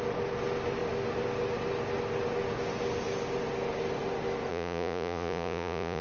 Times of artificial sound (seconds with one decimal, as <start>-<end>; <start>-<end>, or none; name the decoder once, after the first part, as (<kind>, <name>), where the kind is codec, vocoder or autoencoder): 4.5-6.0 (vocoder, Vocos)